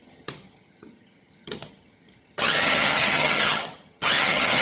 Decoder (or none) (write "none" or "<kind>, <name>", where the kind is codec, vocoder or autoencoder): vocoder, HiFi-GAN